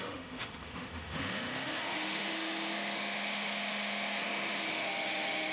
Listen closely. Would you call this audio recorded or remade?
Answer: remade